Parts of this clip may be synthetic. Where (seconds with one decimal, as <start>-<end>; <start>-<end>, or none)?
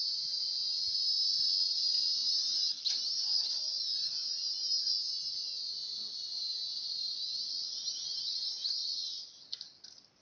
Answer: none